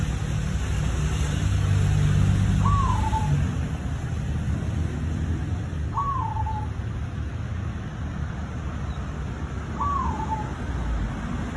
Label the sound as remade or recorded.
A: recorded